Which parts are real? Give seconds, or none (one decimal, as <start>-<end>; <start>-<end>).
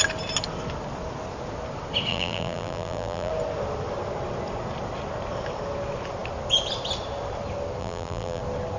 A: 0.0-2.1; 3.3-7.8; 8.4-8.8